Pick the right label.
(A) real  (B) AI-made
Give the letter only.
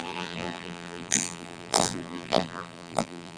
B